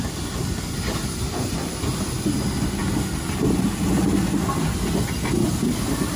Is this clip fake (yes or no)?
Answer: no